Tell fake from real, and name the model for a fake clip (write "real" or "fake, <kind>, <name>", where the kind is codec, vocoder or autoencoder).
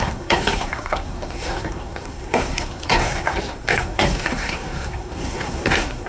fake, codec, SNAC